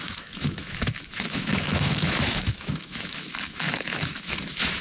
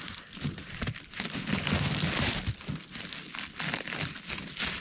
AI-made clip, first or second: first